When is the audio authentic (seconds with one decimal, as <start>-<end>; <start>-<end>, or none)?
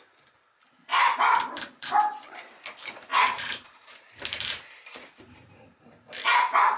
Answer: 0.0-0.9; 1.9-3.1; 5.9-6.8